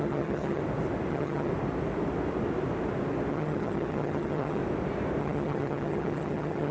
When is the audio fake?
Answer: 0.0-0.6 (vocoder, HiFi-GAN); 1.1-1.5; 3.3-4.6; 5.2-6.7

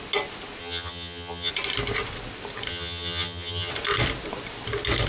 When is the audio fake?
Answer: 0.6-1.5 (vocoder, HiFi-GAN); 2.7-3.7

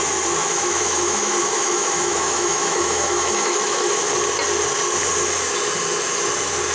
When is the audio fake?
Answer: 0.4-4.1 (autoencoder, DAC-VAE)